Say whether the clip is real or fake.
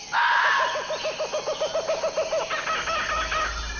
real